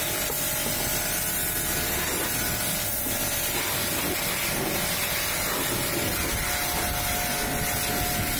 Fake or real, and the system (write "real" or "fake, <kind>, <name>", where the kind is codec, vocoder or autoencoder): real